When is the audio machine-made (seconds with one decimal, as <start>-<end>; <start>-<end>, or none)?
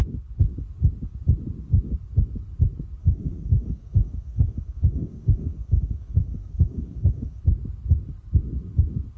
3.0-7.4